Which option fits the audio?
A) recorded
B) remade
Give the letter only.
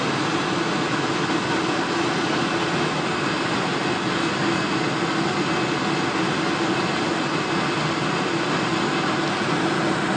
A